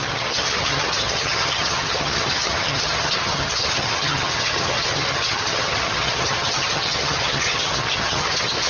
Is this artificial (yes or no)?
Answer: yes